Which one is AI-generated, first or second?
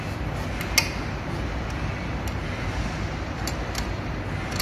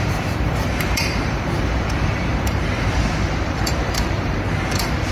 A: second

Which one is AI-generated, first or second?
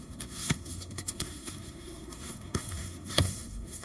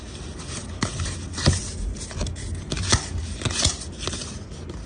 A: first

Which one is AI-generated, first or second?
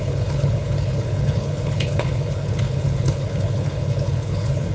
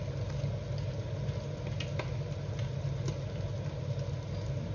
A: first